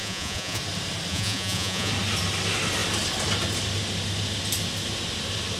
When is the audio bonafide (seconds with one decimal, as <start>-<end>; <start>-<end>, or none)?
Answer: 0.6-1.1; 1.9-5.6